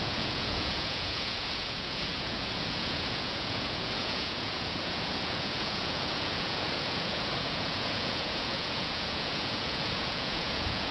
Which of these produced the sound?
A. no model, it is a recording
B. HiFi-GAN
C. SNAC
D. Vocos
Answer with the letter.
D